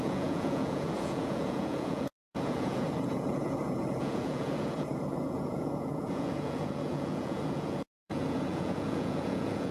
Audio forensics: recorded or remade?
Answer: remade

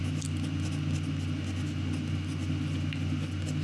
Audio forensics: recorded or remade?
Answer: recorded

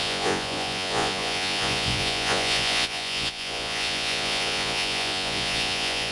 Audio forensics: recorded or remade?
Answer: remade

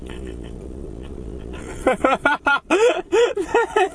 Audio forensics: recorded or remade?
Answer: remade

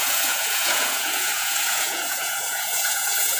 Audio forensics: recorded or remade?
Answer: remade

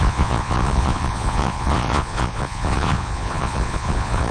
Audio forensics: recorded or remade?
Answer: remade